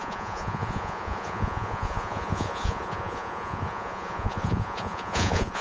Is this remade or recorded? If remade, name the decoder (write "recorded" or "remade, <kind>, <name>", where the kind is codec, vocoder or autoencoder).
remade, vocoder, Vocos